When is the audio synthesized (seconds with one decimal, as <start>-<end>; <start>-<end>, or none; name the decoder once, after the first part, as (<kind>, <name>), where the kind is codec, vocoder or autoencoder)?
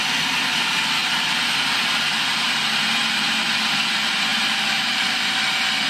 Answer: 4.3-4.9 (vocoder, BigVGAN v2)